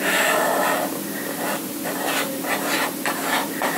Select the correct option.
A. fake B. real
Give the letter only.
A